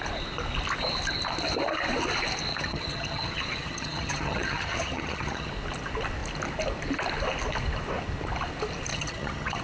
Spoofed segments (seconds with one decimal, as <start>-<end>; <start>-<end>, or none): 2.5-5.5; 8.9-9.6